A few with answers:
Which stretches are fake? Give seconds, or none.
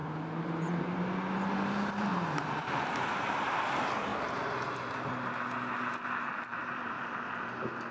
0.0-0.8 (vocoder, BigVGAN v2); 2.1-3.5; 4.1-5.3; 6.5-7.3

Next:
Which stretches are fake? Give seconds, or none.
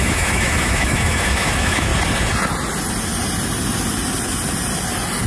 0.0-1.9 (autoencoder, DAC-VAE)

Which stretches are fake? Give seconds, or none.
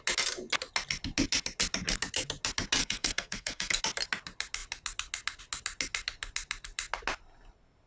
2.8-3.8 (codec, SNAC)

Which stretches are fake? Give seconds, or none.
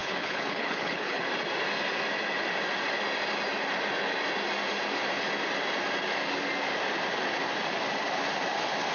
0.0-1.2 (codec, HILCodec)